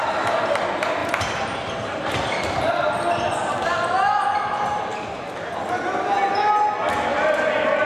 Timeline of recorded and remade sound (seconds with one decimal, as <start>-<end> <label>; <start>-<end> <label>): 0.0-1.0 recorded; 1.0-2.7 remade; 2.7-7.1 recorded; 7.1-7.9 remade